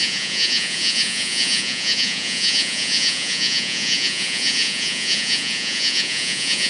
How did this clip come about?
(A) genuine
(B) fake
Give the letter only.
B